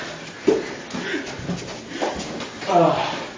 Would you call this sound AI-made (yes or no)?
no